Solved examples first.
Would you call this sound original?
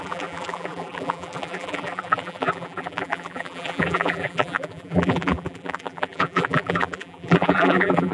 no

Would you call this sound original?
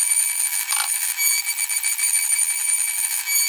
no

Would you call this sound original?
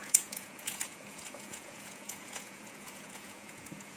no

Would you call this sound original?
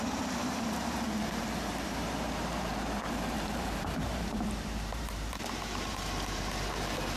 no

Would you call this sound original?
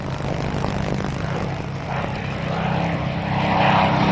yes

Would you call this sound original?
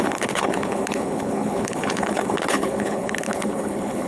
no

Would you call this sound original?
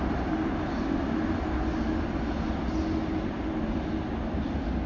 yes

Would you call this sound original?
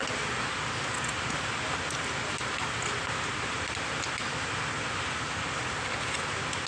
yes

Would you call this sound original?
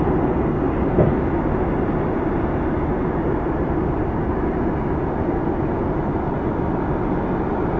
yes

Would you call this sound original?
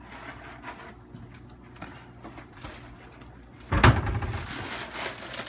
yes